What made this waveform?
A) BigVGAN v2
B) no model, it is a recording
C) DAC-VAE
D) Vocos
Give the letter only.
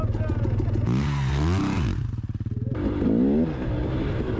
B